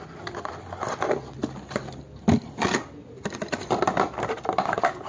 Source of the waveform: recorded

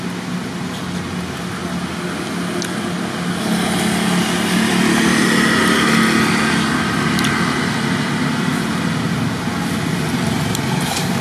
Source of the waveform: recorded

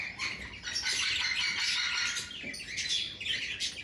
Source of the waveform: recorded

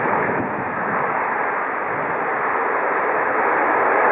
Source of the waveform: recorded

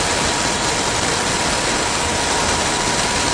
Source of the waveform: recorded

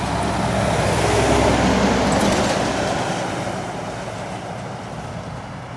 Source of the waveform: recorded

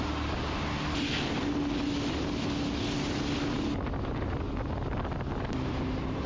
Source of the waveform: recorded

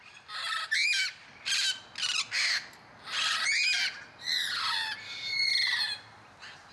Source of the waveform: recorded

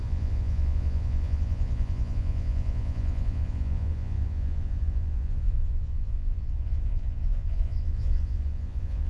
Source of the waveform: remade